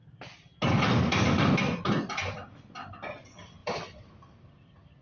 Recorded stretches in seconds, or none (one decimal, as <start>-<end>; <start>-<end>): 0.0-5.0